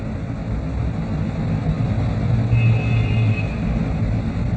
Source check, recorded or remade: recorded